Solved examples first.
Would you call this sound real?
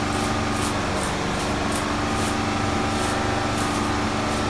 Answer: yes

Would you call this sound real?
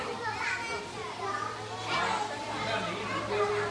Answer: yes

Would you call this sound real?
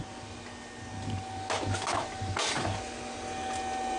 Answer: yes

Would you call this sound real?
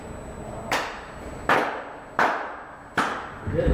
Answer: yes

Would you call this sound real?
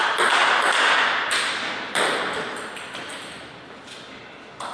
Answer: yes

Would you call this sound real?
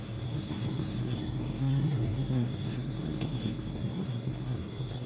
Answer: no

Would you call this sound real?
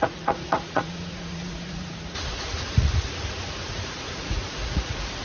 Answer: no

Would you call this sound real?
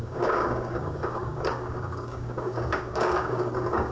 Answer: no